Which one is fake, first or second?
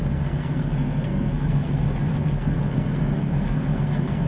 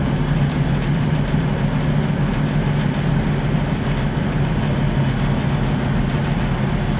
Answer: first